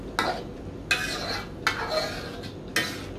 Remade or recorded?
recorded